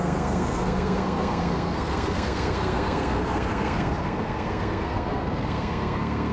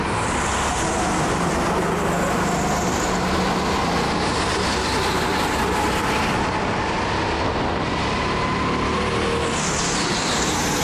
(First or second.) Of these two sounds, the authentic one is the second